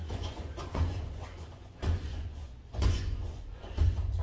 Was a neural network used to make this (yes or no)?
yes